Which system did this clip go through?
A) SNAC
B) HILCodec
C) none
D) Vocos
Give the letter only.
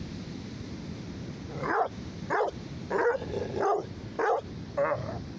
C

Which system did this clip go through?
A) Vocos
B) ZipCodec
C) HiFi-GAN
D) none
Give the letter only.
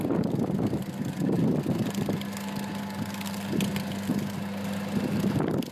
D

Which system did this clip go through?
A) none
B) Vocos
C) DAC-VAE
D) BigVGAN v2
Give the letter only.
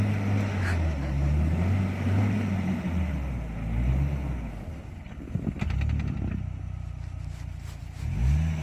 A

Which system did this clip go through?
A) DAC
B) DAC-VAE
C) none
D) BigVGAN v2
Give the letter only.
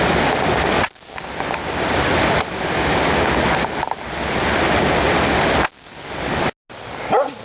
C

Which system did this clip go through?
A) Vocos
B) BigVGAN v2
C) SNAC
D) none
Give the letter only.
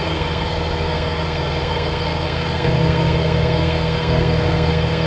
C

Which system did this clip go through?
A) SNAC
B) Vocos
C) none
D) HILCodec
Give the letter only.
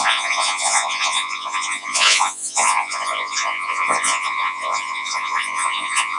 B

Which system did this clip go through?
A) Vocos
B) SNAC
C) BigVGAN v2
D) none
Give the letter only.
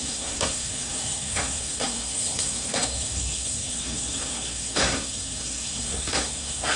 B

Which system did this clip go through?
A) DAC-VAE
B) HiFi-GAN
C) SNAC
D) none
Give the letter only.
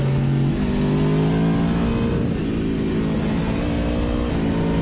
D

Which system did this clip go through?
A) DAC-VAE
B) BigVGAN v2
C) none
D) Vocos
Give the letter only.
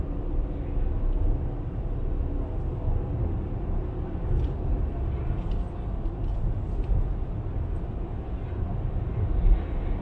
C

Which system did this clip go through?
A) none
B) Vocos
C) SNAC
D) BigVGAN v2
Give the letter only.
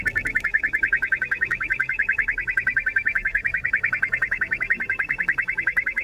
C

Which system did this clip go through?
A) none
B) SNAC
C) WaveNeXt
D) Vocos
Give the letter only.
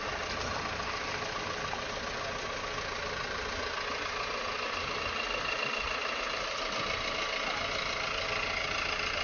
A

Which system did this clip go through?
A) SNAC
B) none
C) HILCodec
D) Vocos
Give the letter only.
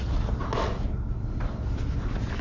B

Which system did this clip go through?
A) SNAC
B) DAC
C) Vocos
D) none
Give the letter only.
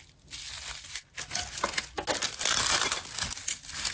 D